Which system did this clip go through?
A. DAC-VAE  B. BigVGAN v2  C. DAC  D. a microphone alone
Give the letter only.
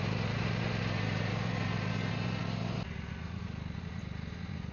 D